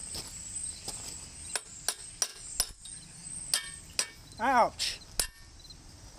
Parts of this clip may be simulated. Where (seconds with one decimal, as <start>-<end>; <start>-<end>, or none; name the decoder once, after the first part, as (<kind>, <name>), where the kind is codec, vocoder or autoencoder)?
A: none